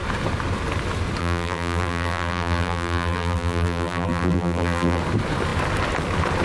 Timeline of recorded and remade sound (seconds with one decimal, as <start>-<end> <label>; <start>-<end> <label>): 0.0-1.2 recorded; 1.2-5.0 remade; 5.0-6.4 recorded